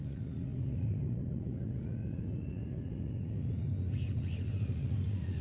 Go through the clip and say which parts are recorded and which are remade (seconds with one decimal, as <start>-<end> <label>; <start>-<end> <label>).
0.0-5.4 remade